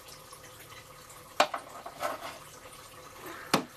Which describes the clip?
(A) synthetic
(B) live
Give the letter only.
B